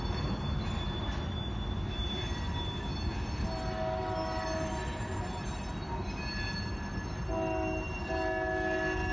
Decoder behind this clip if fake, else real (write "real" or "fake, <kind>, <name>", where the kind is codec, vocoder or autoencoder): real